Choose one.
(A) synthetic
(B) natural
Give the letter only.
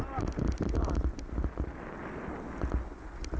B